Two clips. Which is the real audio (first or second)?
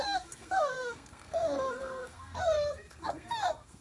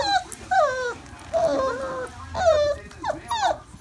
second